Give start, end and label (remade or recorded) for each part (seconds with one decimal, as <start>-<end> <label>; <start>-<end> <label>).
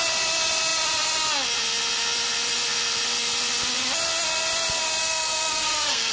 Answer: 0.0-5.0 recorded; 5.0-6.1 remade